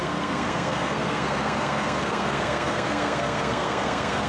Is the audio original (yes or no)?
no